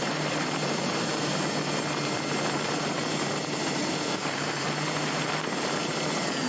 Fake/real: fake